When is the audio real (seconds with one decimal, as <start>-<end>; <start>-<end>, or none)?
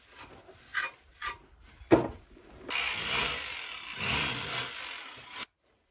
0.0-5.9